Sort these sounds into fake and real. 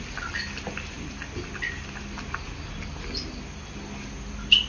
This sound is real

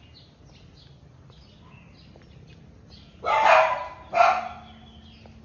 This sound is real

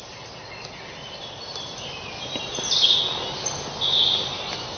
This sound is real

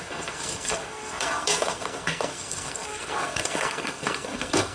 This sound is fake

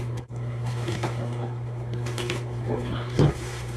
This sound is fake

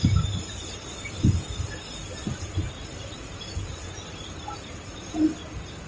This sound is fake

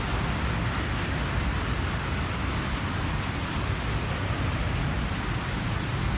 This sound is real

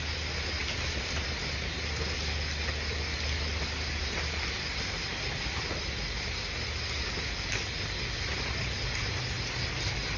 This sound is real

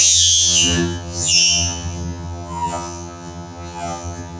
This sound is fake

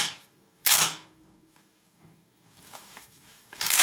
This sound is fake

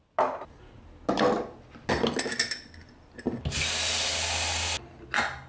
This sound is real